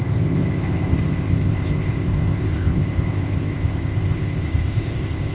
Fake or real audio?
fake